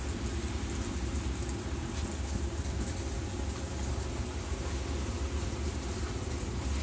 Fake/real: real